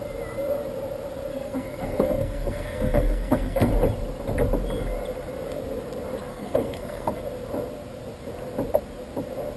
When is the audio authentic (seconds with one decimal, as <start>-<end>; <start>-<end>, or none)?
0.0-1.3; 3.7-6.3; 7.2-9.6